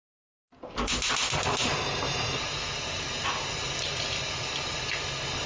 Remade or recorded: recorded